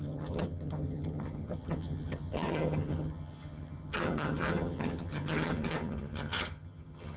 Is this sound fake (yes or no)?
yes